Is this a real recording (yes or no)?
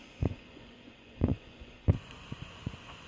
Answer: no